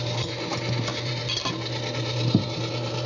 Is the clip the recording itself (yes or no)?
yes